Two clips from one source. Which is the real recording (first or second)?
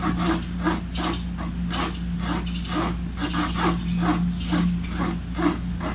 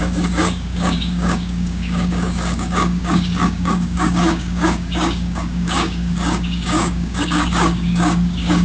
first